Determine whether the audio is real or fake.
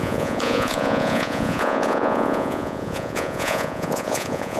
fake